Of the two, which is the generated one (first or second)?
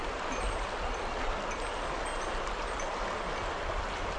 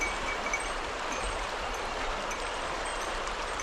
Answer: second